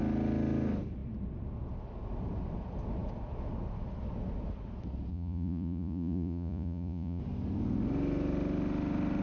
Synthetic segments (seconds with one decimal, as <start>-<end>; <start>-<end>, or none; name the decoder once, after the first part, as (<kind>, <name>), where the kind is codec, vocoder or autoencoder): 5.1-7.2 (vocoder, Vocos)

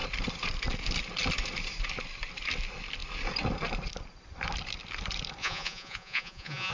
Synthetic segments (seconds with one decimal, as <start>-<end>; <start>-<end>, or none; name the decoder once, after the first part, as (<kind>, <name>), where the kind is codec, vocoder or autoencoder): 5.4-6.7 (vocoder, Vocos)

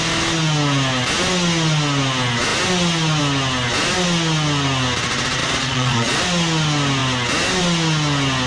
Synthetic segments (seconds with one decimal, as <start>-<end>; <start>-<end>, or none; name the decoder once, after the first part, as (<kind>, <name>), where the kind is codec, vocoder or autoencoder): 5.4-6.2 (vocoder, Vocos)

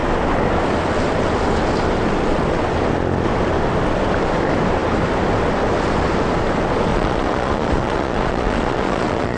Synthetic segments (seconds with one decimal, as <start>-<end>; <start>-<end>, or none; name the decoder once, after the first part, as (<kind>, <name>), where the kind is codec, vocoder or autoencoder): 6.9-9.4 (vocoder, Vocos)

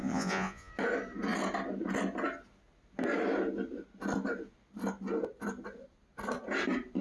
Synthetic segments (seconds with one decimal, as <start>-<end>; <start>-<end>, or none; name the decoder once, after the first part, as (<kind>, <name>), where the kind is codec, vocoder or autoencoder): 0.0-0.7 (vocoder, Vocos)

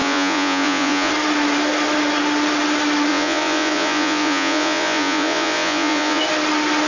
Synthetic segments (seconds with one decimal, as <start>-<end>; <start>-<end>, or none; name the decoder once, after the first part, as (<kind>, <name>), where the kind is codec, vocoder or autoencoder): 0.0-1.1 (vocoder, Vocos); 3.1-6.2

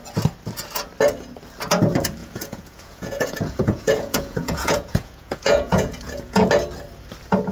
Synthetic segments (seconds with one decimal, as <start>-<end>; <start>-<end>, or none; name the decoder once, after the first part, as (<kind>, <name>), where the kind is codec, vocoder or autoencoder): 2.2-6.5 (vocoder, Vocos)

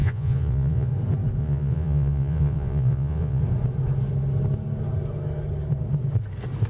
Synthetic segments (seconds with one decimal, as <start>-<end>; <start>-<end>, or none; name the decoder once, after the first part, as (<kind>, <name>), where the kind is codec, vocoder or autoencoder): 0.0-0.9 (vocoder, Vocos); 1.4-3.4